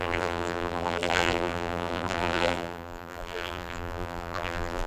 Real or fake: fake